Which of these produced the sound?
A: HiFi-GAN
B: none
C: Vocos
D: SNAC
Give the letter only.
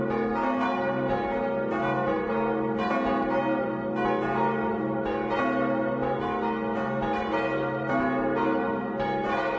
B